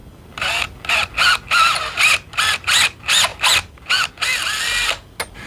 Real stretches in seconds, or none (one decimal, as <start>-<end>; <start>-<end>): 0.0-5.5